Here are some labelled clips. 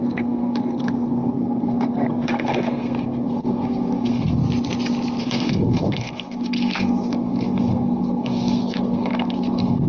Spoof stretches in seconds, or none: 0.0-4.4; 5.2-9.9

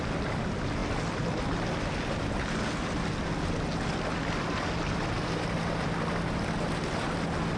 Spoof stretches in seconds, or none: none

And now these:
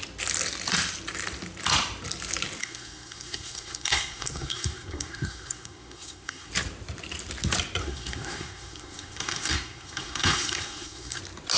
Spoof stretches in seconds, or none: 2.6-6.5; 7.8-11.2

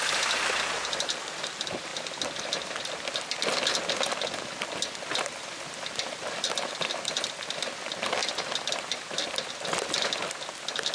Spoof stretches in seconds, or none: none

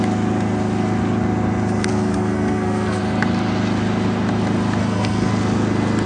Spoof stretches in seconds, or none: 1.9-3.0; 4.8-5.3